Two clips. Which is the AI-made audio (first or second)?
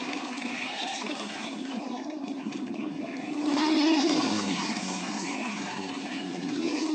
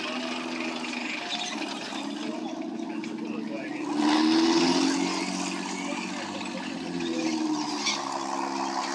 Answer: first